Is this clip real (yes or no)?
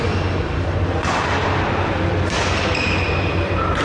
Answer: yes